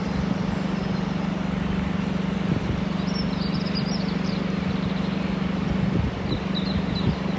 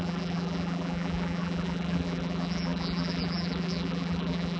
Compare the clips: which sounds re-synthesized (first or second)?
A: second